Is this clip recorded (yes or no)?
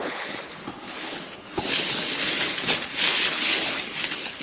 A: no